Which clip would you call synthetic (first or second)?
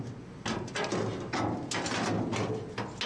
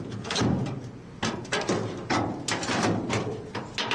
second